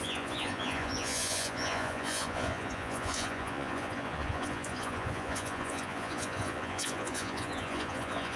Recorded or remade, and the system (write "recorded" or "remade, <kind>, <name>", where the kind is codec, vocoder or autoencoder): remade, vocoder, Vocos